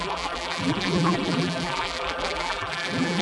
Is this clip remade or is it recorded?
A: remade